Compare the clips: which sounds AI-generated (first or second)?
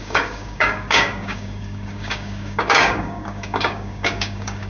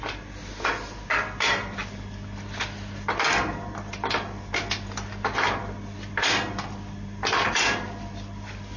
first